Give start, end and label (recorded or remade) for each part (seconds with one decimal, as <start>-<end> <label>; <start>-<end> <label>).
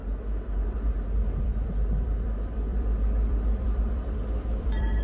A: 0.0-1.4 recorded; 1.4-5.0 remade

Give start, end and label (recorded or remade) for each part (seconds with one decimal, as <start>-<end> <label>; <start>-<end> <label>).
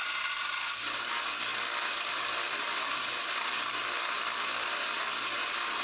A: 0.0-1.1 remade; 1.1-1.5 recorded; 1.5-5.0 remade; 5.0-5.8 recorded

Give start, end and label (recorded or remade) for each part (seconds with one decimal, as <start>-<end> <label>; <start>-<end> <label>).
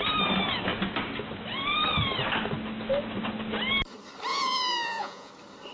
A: 0.0-4.3 recorded; 4.3-5.3 remade; 5.3-5.7 recorded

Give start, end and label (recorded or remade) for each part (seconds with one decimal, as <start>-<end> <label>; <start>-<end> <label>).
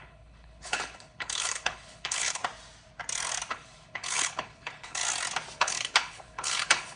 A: 0.0-2.4 remade; 2.4-3.5 recorded; 3.5-5.0 remade; 5.0-5.6 recorded; 5.6-7.0 remade